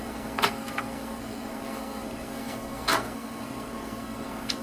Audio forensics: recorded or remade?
remade